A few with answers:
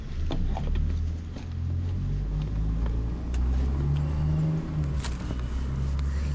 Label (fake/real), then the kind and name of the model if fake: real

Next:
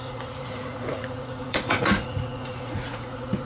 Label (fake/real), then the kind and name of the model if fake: fake, vocoder, Vocos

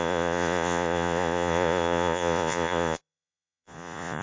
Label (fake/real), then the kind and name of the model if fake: fake, vocoder, Vocos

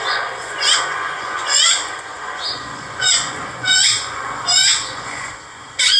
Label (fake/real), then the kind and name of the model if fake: fake, vocoder, Vocos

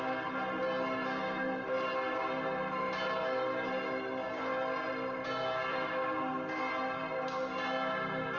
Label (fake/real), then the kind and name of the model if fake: real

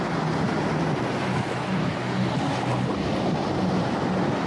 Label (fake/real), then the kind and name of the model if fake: real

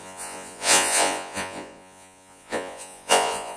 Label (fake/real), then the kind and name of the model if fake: fake, vocoder, Vocos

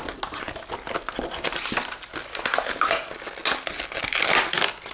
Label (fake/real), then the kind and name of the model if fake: real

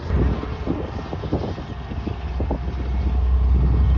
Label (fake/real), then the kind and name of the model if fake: real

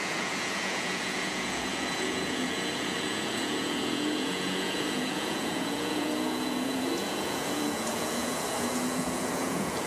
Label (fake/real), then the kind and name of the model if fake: fake, vocoder, Vocos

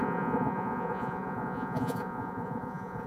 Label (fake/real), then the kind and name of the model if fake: fake, vocoder, Vocos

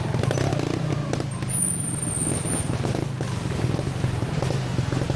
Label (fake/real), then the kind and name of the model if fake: real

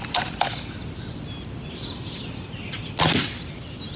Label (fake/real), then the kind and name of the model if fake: real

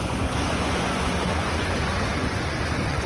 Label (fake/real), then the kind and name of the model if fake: fake, vocoder, Vocos